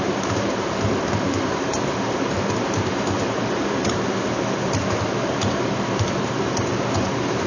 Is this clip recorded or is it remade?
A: remade